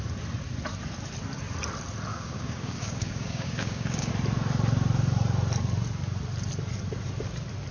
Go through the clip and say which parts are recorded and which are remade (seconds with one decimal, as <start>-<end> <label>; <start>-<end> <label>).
0.0-2.1 recorded; 2.1-4.1 remade; 4.1-7.7 recorded